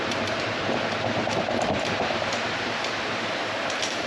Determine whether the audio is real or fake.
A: fake